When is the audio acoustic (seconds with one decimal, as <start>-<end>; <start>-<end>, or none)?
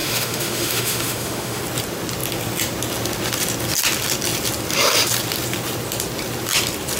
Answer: 1.6-7.0